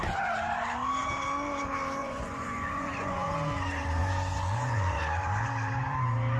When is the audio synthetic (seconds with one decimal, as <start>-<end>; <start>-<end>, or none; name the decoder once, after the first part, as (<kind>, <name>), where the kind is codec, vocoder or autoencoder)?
2.0-3.3 (vocoder, Vocos); 4.0-5.0